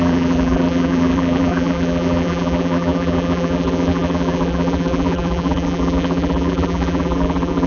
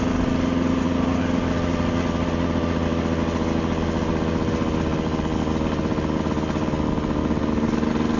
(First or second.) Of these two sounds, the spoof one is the first